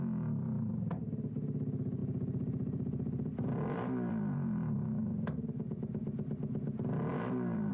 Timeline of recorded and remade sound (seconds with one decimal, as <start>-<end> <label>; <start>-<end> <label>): 0.0-2.0 recorded; 2.0-5.0 remade; 5.0-7.1 recorded; 7.1-7.7 remade